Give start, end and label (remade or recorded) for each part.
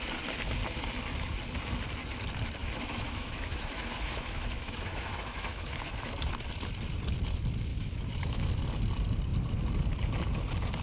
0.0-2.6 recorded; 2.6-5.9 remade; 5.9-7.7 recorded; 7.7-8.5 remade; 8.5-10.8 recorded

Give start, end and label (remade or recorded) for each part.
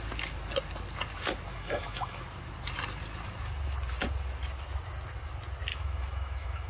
0.0-1.5 recorded; 1.5-2.2 remade; 2.2-5.7 recorded; 5.7-6.7 remade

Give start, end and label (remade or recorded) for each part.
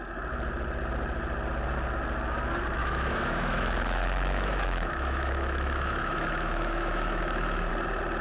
0.0-2.8 recorded; 2.8-7.7 remade; 7.7-8.2 recorded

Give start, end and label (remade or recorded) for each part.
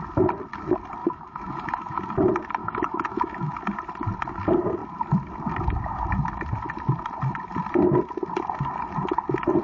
0.0-1.0 recorded; 1.0-2.0 remade; 2.0-2.6 recorded; 2.6-3.5 remade; 3.5-9.6 recorded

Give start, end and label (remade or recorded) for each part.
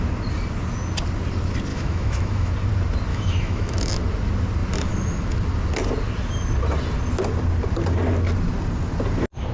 0.0-1.7 recorded; 1.7-2.5 remade; 2.5-3.1 recorded; 3.1-3.9 remade; 3.9-9.5 recorded